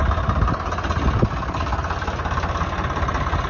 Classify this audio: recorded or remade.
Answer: recorded